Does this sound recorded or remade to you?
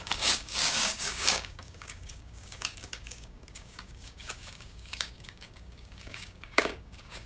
remade